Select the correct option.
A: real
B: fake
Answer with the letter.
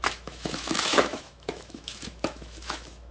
B